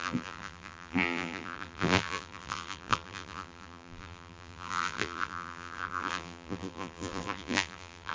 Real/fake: fake